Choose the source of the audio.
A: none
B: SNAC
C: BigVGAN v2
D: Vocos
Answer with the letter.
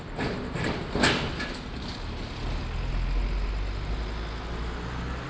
A